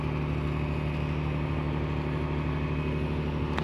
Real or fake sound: real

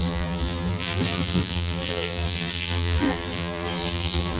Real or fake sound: fake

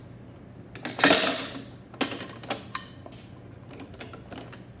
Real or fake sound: real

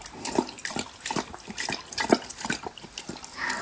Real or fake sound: real